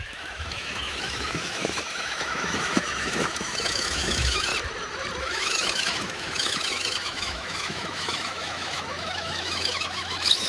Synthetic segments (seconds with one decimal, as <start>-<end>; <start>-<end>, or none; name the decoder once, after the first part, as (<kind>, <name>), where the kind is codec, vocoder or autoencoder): 0.0-4.5 (autoencoder, DAC-VAE); 5.2-10.5